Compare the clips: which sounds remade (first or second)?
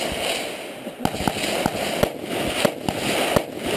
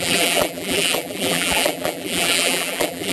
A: second